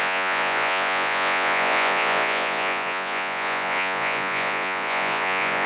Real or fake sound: fake